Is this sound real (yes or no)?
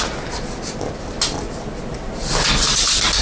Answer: yes